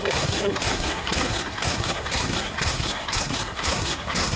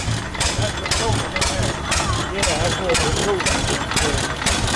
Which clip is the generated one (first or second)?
first